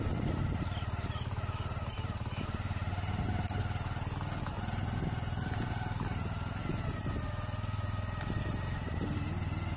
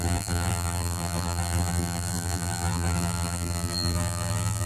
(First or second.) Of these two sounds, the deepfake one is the second